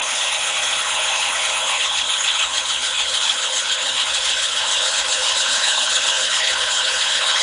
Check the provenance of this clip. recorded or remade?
remade